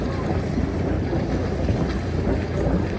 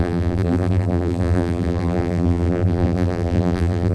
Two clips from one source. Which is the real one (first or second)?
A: first